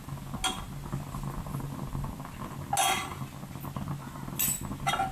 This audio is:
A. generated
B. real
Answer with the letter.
B